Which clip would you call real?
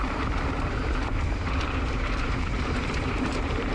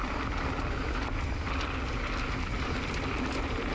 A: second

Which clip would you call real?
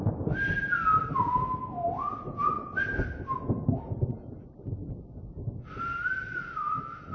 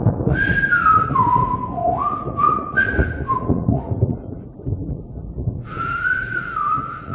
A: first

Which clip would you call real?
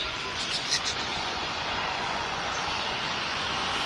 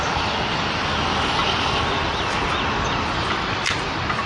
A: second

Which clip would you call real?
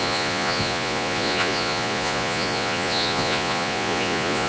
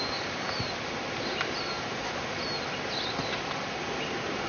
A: second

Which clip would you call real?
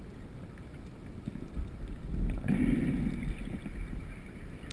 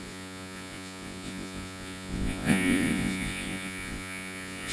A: first